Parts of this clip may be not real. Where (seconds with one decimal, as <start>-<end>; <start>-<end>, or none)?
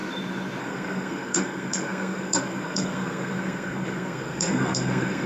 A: 0.6-5.3